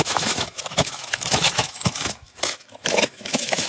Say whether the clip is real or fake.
fake